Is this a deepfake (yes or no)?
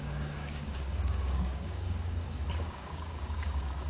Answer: yes